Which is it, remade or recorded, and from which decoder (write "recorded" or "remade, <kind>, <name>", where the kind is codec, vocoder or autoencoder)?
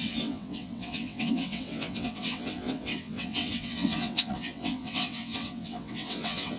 remade, vocoder, WaveNeXt